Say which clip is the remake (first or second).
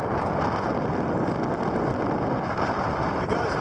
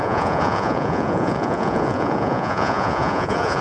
second